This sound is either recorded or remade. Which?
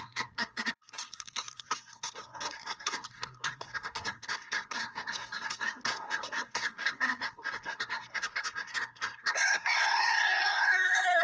remade